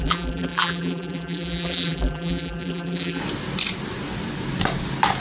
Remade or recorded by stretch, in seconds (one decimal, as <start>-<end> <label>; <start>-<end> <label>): 0.0-3.2 remade; 3.2-5.2 recorded